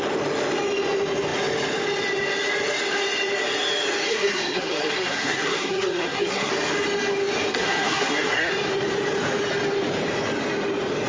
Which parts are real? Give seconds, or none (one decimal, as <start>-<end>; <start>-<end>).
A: 0.0-4.1; 6.5-7.5; 8.5-11.1